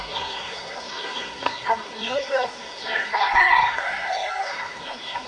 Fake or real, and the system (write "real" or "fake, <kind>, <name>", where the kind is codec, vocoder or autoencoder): fake, codec, SNAC